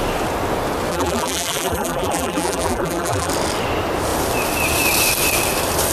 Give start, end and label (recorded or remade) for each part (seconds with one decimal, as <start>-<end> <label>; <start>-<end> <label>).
0.0-0.9 recorded; 0.9-3.3 remade; 3.3-5.9 recorded